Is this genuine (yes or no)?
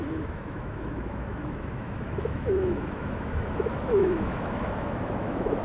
no